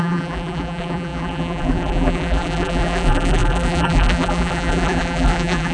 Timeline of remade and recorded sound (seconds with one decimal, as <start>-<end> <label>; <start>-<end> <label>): 0.0-5.7 remade